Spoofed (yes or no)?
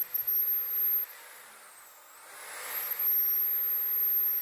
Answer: no